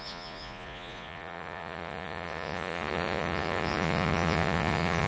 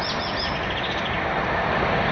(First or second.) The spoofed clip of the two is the first